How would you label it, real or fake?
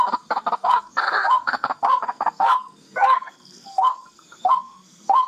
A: fake